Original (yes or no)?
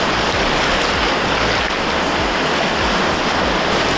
yes